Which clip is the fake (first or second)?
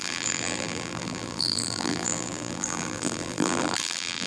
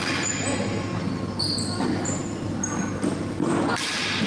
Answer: first